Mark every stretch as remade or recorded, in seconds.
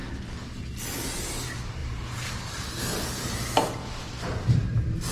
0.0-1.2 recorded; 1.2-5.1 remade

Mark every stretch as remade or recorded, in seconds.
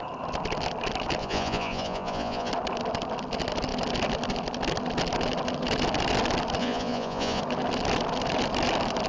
0.0-1.2 recorded; 1.2-2.5 remade; 2.5-6.6 recorded; 6.6-7.4 remade; 7.4-9.1 recorded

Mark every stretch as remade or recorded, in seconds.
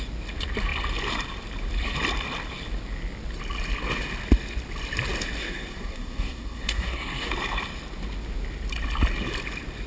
0.0-5.4 recorded; 5.4-7.3 remade; 7.3-9.9 recorded